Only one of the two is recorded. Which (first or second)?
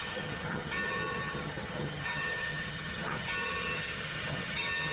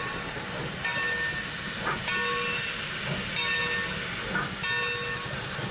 second